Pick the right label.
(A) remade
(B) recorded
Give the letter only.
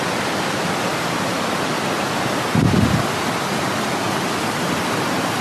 B